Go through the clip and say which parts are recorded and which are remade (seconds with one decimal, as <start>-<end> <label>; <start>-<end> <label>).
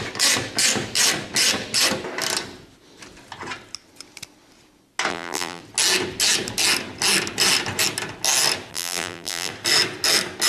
0.0-5.1 recorded; 5.1-5.6 remade; 5.6-8.7 recorded; 8.7-9.5 remade; 9.5-10.5 recorded